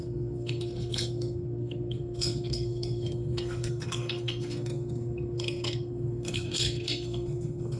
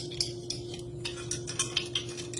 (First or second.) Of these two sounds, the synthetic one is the first